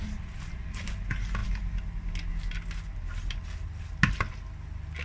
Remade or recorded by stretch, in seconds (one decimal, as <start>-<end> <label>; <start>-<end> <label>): 0.0-5.0 recorded